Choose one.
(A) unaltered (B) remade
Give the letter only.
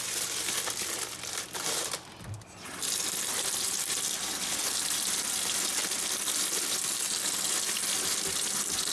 A